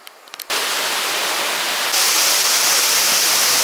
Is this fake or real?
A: real